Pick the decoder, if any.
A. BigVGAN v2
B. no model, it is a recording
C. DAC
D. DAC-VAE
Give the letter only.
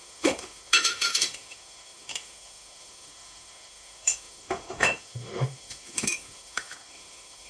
D